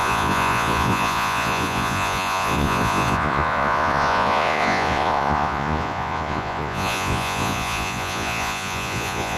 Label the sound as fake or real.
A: fake